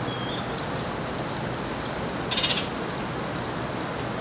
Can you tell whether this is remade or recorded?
recorded